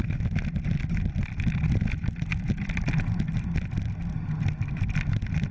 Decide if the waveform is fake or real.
real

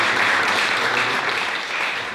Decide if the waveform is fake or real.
fake